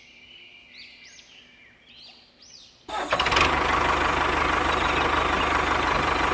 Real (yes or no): yes